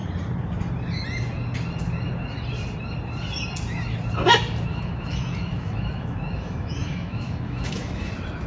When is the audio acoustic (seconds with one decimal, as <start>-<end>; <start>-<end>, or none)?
0.0-4.7; 8.1-8.5